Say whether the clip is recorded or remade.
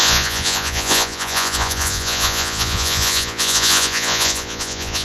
remade